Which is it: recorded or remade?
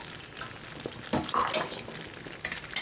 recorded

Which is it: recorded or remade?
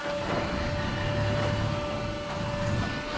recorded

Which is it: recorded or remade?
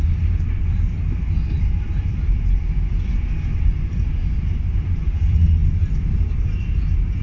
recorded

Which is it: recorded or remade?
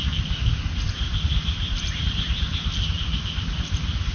recorded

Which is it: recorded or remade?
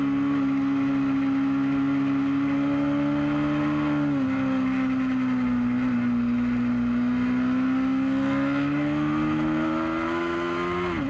recorded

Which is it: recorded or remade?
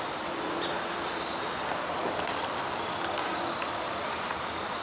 recorded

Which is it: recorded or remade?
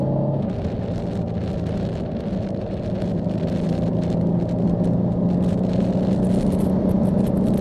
recorded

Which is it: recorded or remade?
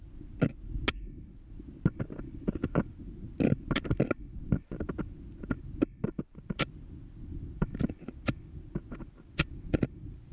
recorded